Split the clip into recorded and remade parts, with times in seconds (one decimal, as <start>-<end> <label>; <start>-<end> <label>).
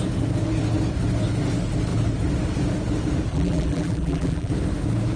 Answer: 0.0-3.3 recorded; 3.3-4.5 remade; 4.5-5.2 recorded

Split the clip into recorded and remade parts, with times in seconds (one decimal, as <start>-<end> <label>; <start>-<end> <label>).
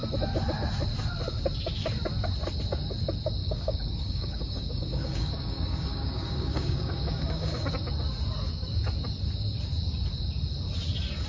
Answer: 0.0-3.4 recorded; 3.4-7.7 remade; 7.7-11.3 recorded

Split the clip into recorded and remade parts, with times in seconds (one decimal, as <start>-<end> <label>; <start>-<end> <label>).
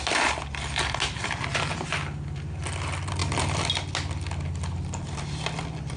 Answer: 0.0-3.2 recorded; 3.2-3.7 remade; 3.7-6.0 recorded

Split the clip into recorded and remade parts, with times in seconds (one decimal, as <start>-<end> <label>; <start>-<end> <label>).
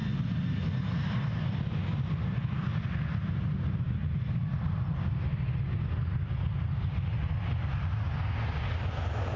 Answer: 0.0-9.4 recorded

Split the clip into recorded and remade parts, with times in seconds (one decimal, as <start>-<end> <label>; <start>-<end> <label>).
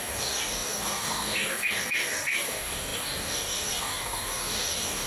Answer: 0.0-5.1 remade